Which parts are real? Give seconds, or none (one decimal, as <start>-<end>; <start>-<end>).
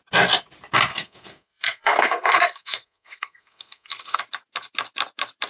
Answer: 0.0-0.9; 4.2-5.5